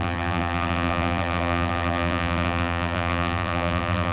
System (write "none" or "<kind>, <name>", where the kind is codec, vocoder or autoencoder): vocoder, BigVGAN v2